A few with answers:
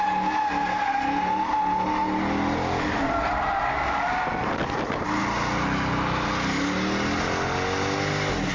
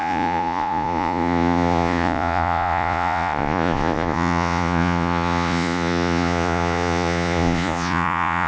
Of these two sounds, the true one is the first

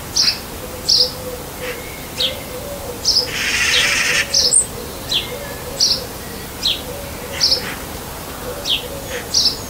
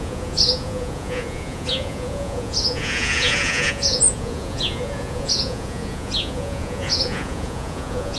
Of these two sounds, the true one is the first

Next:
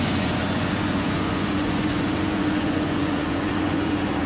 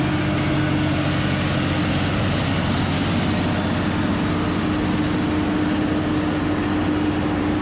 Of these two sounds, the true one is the second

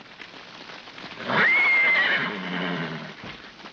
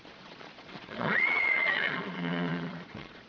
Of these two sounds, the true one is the first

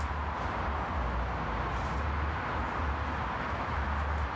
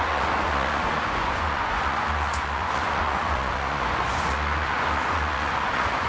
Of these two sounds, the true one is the first